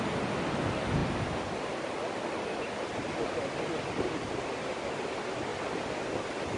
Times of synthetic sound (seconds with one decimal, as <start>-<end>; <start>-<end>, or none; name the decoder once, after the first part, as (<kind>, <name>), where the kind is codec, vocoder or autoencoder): none